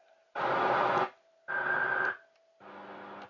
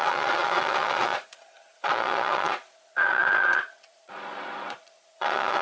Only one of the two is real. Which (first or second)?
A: first